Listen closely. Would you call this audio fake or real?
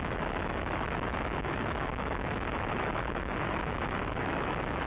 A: fake